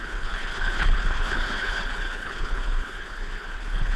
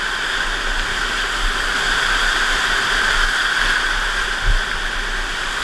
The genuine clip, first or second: second